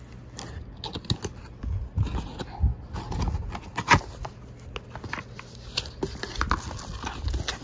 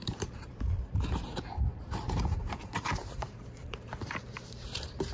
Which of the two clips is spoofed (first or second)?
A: second